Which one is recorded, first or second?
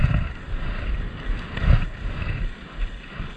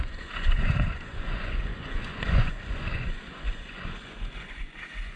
first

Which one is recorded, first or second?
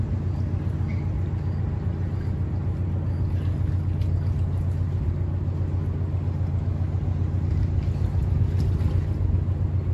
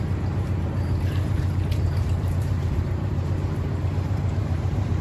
first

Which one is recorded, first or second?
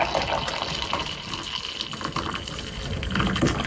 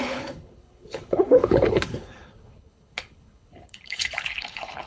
first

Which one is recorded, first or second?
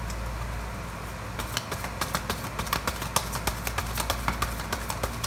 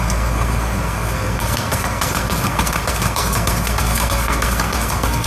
first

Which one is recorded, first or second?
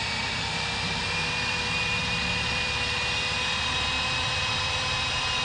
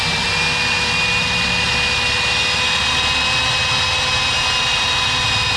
second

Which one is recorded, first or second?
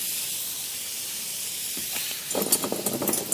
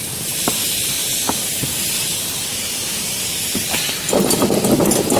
first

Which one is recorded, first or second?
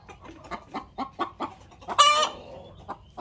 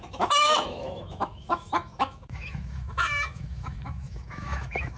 first